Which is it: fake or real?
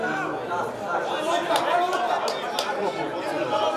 real